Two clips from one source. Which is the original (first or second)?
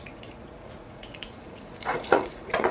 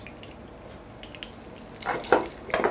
second